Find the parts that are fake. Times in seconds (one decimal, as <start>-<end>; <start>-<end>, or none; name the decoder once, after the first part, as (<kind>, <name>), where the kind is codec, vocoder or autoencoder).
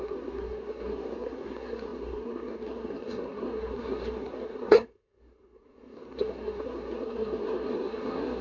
0.0-8.4 (codec, SNAC)